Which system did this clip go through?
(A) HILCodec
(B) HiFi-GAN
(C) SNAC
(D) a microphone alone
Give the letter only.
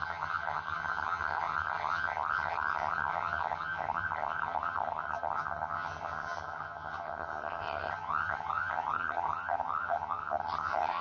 B